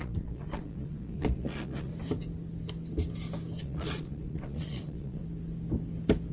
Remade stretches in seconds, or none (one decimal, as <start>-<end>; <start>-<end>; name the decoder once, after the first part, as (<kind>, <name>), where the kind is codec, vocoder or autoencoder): 0.0-1.9 (vocoder, Vocos); 3.6-5.2